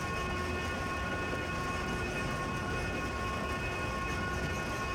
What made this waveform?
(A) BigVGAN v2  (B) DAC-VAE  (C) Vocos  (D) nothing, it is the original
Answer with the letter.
D